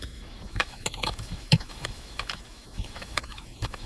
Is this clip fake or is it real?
fake